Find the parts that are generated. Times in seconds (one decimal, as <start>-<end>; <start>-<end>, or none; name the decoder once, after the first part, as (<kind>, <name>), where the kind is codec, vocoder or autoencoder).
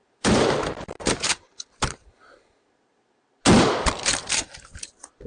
0.0-3.2 (vocoder, BigVGAN v2); 4.1-5.3